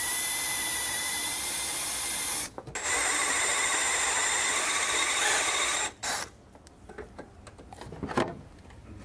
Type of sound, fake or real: real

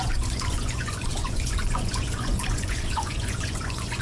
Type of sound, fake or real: fake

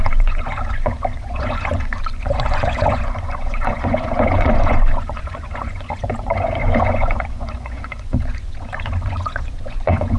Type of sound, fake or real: fake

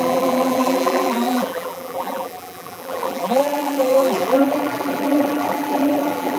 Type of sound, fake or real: fake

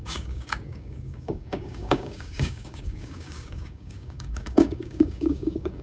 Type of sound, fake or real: fake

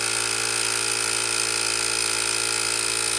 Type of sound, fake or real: real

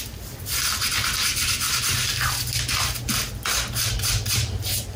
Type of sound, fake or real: real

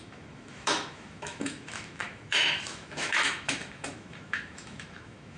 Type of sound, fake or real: fake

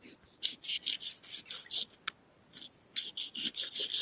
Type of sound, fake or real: real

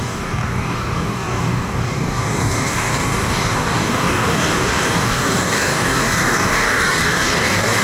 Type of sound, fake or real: fake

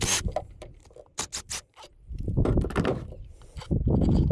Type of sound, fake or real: real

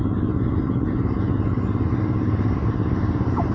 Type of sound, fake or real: real